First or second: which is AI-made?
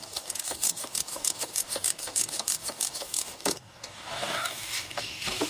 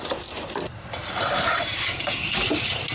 first